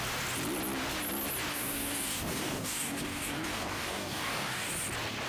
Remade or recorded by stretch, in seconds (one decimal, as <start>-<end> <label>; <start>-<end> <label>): 0.0-1.5 recorded; 1.5-4.7 remade; 4.7-5.3 recorded